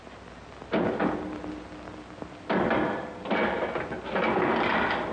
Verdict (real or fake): real